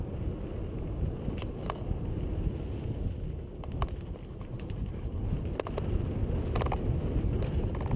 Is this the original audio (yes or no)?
yes